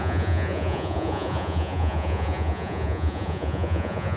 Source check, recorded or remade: remade